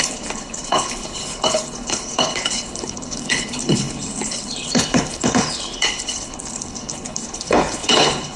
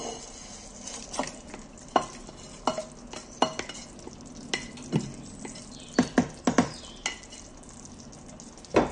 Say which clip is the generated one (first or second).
first